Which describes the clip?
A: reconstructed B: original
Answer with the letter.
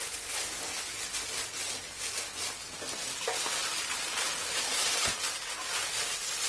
B